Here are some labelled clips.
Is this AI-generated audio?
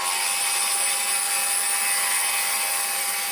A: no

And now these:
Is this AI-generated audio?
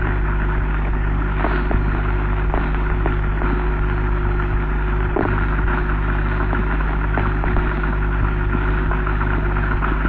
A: no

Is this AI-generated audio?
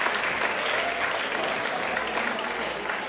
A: no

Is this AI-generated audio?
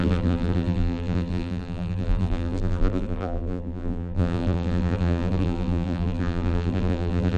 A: yes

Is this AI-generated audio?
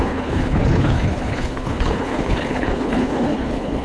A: yes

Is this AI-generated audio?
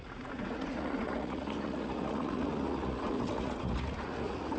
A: yes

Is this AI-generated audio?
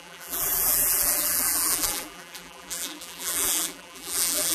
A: yes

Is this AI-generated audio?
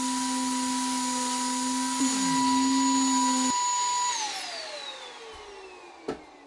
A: no